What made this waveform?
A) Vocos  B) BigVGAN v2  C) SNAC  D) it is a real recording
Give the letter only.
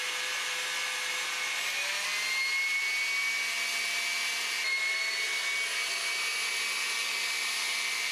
D